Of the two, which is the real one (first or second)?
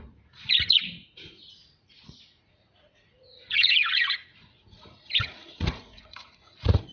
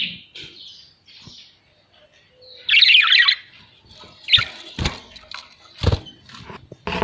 second